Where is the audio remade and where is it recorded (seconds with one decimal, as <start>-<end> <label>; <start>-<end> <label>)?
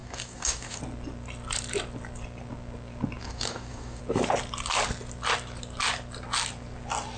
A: 0.0-0.8 remade; 0.8-3.2 recorded; 3.2-4.0 remade; 4.0-7.2 recorded